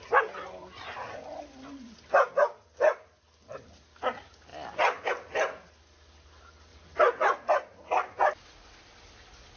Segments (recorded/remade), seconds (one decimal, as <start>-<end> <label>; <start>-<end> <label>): 0.0-6.7 recorded; 6.7-7.5 remade; 7.5-9.6 recorded